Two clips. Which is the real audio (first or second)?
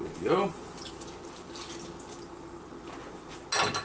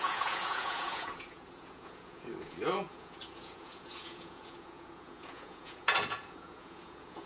first